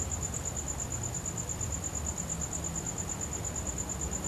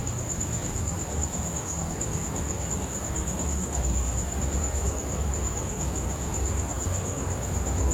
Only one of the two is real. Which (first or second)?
first